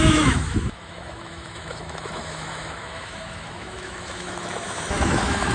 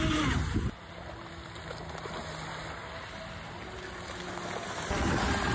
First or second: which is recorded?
second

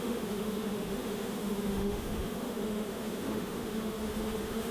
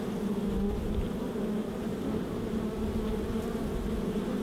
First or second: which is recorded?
second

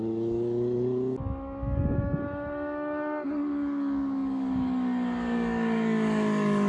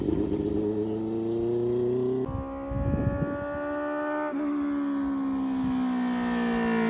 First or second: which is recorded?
second